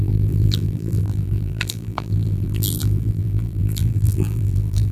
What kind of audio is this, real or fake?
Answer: fake